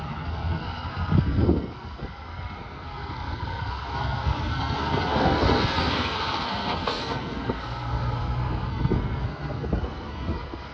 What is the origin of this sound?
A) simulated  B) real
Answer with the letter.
A